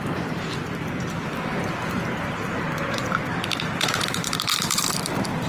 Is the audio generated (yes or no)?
yes